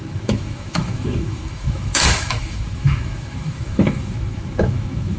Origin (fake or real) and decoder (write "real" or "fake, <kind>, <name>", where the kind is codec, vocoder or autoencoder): fake, autoencoder, DAC-VAE